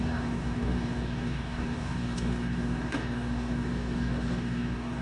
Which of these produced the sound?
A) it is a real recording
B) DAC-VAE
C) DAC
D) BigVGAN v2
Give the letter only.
C